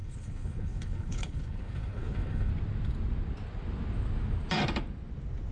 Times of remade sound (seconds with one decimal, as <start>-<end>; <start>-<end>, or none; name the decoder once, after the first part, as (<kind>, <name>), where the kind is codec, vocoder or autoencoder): 0.0-2.5 (codec, HILCodec)